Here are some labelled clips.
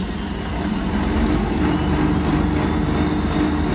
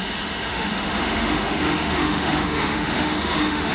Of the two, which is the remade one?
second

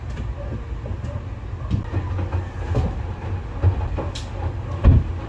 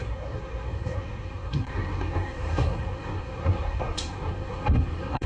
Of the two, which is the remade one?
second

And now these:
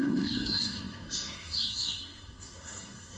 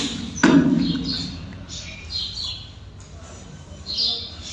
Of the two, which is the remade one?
first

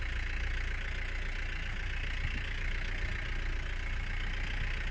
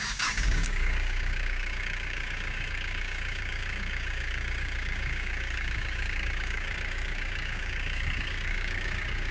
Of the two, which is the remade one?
second